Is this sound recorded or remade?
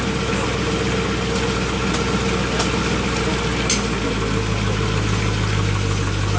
recorded